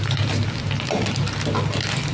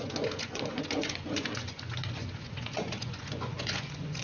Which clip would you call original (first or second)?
first